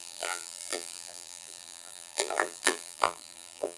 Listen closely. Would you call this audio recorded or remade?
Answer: remade